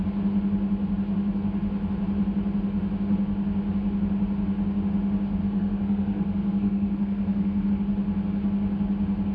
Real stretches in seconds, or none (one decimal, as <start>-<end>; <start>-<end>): 0.0-5.4; 7.7-9.3